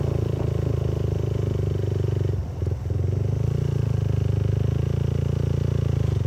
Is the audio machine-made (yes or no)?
no